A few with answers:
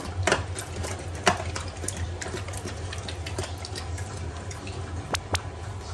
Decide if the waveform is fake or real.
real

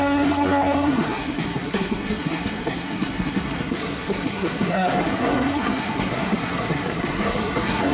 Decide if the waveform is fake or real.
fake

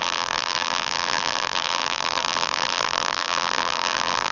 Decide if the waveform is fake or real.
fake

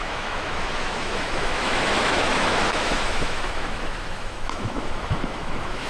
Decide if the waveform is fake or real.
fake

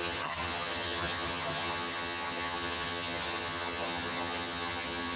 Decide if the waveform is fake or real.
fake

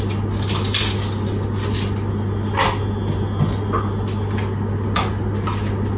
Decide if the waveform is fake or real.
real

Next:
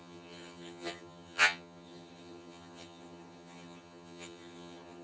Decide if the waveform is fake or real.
fake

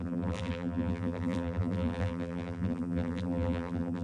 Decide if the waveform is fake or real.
fake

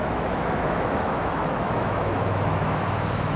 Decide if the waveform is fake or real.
fake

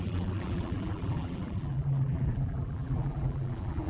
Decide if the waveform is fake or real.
fake